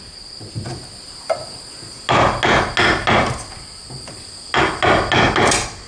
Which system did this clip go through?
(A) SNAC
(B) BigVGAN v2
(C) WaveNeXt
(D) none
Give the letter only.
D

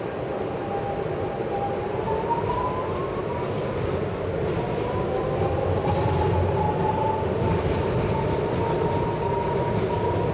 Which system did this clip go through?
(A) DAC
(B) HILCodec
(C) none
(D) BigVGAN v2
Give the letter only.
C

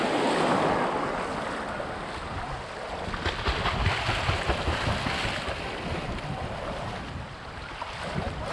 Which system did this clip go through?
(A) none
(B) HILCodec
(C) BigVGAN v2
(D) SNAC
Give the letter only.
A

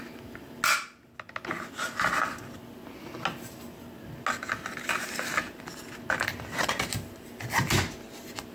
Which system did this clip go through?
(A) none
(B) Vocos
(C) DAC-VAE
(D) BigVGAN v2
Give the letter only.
A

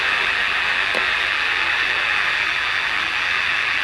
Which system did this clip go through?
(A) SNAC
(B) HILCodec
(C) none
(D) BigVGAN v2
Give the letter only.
D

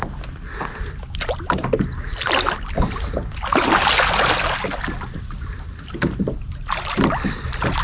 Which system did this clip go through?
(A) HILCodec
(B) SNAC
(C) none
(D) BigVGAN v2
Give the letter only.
C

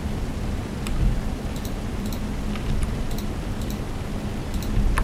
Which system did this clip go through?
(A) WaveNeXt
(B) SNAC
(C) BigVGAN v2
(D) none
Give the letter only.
C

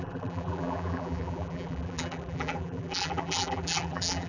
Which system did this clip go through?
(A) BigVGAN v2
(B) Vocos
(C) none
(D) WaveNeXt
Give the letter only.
A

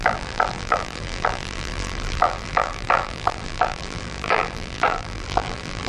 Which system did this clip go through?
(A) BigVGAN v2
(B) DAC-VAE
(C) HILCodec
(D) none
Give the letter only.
A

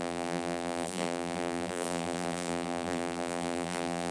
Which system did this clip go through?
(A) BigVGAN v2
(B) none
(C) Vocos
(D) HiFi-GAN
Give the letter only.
A